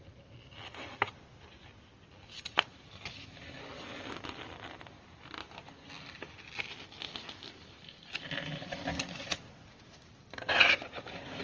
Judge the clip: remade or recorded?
recorded